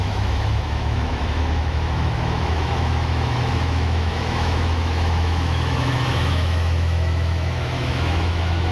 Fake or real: fake